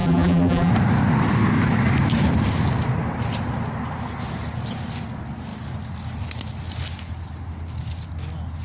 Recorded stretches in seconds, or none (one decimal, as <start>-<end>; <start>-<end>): 0.7-8.6